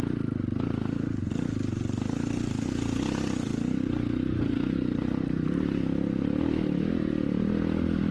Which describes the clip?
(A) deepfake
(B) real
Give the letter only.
B